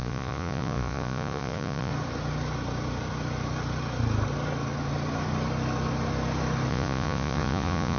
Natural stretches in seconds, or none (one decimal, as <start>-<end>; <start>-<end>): 1.9-6.7